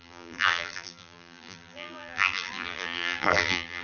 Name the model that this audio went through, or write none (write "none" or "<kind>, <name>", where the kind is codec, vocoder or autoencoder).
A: vocoder, BigVGAN v2